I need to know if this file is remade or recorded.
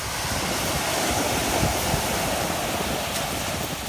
recorded